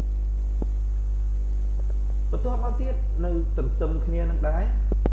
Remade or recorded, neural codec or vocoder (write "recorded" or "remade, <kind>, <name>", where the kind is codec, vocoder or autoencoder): recorded